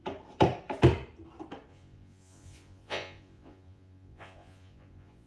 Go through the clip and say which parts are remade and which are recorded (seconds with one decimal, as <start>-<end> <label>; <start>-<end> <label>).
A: 0.0-1.7 recorded; 1.7-5.3 remade